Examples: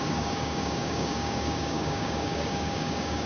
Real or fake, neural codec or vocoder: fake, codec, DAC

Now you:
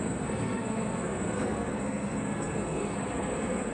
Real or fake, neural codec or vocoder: fake, codec, SNAC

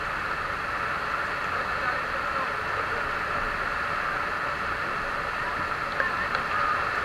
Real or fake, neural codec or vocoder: real